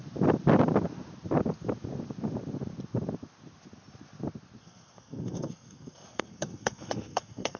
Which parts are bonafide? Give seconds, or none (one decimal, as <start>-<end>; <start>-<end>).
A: 0.0-4.6